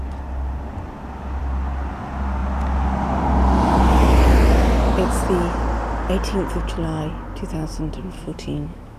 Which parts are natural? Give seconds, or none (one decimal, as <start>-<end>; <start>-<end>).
0.0-8.0